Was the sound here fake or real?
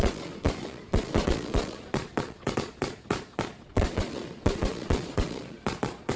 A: fake